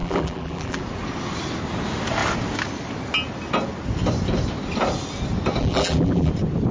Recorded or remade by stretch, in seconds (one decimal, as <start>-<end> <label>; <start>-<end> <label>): 0.0-0.8 remade; 0.8-5.6 recorded; 5.6-6.3 remade; 6.3-6.7 recorded